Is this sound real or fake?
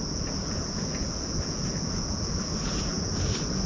fake